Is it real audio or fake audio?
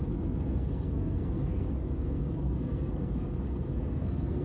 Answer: fake